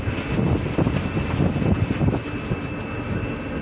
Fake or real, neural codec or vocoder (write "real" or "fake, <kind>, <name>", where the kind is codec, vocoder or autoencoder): real